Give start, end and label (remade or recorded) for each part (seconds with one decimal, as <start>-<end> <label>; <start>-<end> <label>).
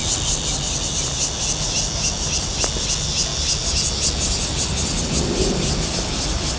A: 0.0-6.6 recorded